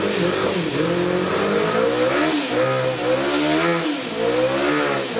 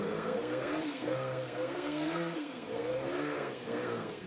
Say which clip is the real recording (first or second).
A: first